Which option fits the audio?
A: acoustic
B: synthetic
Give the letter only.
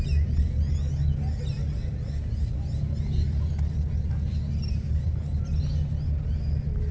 A